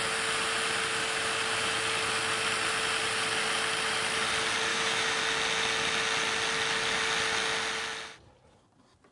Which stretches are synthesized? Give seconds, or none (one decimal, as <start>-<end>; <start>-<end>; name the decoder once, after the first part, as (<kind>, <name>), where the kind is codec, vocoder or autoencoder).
4.7-5.2 (autoencoder, DAC-VAE)